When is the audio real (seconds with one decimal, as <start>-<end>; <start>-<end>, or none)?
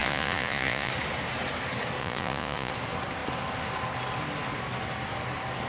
0.9-2.0; 2.7-5.7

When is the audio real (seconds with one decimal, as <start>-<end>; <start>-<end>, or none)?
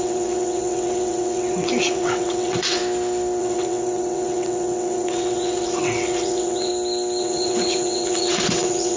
2.8-3.4; 6.7-7.2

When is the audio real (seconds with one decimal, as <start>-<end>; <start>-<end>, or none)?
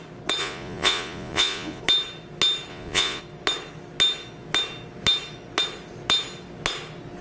0.0-0.4; 1.8-2.7; 3.2-7.2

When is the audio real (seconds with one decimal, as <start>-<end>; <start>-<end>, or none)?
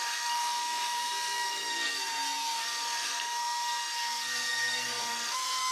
none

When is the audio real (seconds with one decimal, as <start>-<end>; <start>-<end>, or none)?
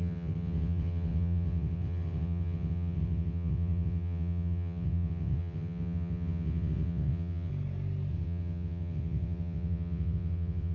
7.5-8.1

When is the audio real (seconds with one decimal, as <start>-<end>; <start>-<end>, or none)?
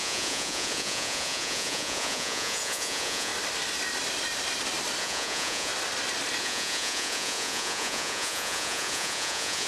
3.3-5.0; 5.7-6.4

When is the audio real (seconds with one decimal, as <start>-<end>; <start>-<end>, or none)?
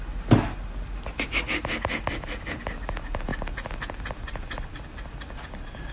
0.0-5.9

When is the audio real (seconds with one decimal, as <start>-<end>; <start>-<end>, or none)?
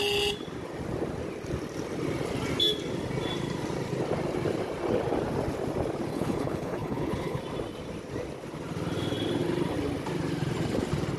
0.0-6.1; 7.4-11.2